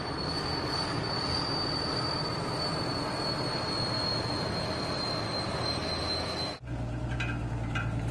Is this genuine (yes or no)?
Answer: yes